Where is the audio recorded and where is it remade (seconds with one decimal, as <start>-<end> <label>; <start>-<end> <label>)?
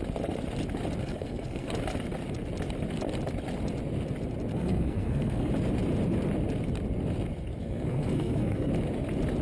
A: 0.0-1.0 recorded; 1.0-1.7 remade; 1.7-4.5 recorded; 4.5-5.5 remade; 5.5-7.6 recorded; 7.6-8.7 remade; 8.7-9.4 recorded